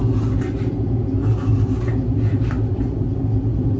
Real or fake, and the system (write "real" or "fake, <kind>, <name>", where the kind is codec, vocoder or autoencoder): real